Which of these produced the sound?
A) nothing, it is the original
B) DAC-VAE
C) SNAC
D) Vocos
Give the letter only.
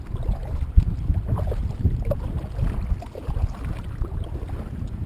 A